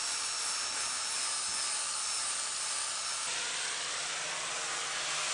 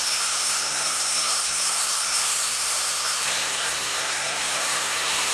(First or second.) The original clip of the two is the first